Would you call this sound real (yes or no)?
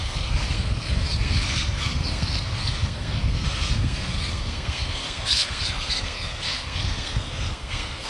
no